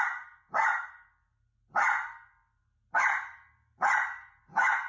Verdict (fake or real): real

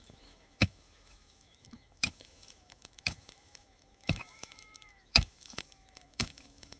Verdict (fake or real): fake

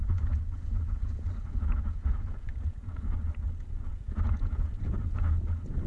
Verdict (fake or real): fake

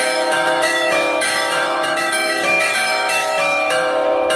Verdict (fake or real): fake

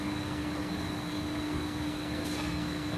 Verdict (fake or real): fake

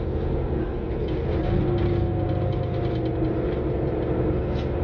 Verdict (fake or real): real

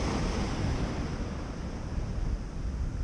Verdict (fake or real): real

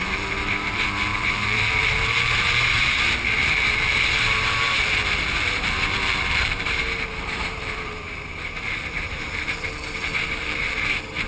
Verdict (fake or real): fake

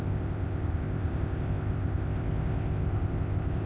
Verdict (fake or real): fake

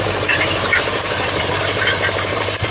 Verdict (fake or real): fake